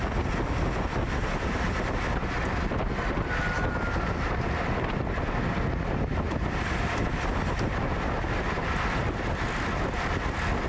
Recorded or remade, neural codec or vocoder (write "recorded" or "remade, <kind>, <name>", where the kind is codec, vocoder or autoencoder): recorded